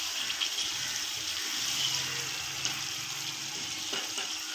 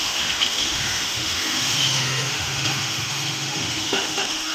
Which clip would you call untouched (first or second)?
first